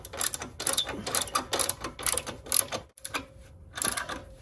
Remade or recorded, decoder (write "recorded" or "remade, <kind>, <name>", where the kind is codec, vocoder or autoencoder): recorded